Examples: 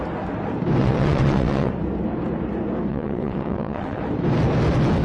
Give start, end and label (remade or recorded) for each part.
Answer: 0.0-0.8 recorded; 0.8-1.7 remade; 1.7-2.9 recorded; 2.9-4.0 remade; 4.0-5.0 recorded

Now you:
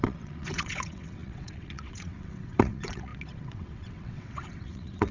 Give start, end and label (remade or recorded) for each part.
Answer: 0.0-5.1 remade

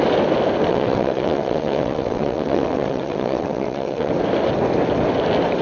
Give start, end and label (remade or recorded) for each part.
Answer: 0.0-0.7 recorded; 0.7-4.1 remade; 4.1-5.6 recorded

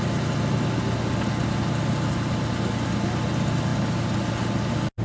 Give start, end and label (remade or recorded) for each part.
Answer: 0.0-5.0 recorded